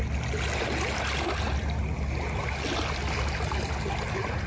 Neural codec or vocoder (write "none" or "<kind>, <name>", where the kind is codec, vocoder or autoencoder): none